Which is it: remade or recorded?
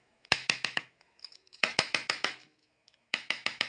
remade